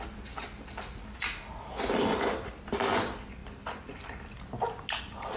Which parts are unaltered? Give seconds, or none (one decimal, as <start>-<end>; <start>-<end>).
3.4-5.0